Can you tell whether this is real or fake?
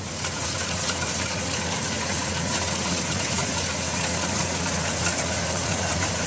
fake